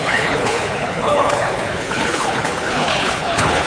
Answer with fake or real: fake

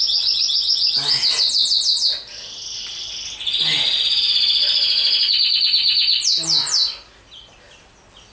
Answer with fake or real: real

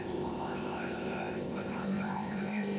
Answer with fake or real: fake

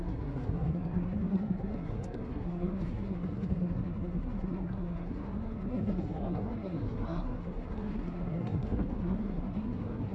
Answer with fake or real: fake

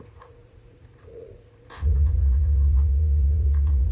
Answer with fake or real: fake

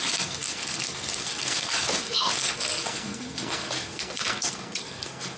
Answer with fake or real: fake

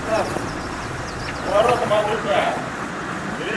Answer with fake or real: fake